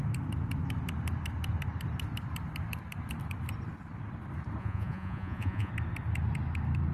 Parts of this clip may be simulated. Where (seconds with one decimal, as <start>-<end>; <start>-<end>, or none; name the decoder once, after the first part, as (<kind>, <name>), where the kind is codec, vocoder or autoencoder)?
4.6-5.7 (vocoder, Vocos)